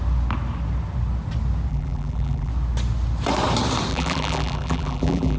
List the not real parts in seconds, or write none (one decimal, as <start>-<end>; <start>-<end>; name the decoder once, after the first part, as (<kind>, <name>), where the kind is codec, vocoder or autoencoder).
1.7-2.5 (vocoder, BigVGAN v2); 3.9-5.4